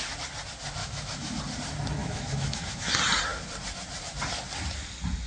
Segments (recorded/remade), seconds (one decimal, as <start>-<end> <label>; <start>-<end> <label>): 0.0-0.8 recorded; 0.8-1.4 remade; 1.4-2.0 recorded; 2.0-2.9 remade; 2.9-5.3 recorded